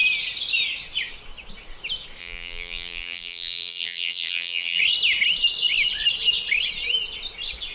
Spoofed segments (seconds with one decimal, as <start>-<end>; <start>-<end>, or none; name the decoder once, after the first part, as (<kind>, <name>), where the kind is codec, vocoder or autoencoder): 2.2-4.8 (vocoder, BigVGAN v2)